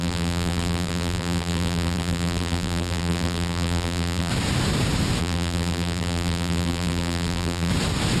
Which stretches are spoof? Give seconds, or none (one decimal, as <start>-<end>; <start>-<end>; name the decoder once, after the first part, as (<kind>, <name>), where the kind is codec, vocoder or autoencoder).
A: 0.0-4.3 (vocoder, BigVGAN v2); 5.2-7.7